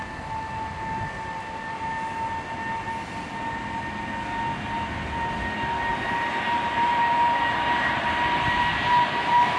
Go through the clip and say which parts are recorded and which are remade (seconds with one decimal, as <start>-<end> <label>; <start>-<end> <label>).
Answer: 0.0-5.9 recorded; 5.9-9.6 remade